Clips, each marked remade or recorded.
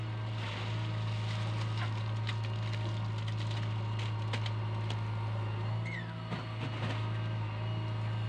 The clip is recorded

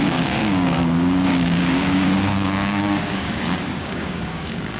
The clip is remade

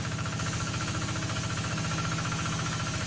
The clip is remade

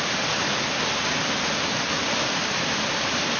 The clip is recorded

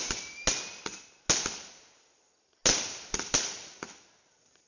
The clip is recorded